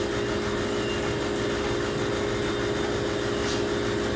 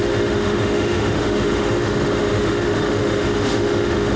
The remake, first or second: second